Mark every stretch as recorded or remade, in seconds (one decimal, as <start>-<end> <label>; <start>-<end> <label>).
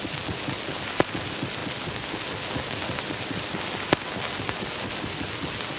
0.0-5.8 recorded